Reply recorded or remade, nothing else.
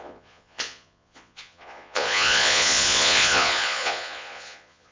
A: remade